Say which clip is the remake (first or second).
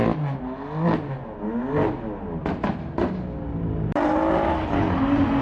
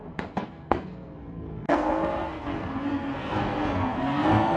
second